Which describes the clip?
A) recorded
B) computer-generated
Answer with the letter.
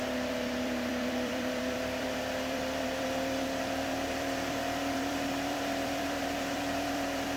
B